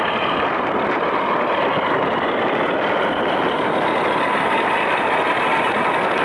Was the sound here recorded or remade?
recorded